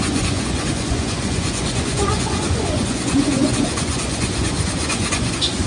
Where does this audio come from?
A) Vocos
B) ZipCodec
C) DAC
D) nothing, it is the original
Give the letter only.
A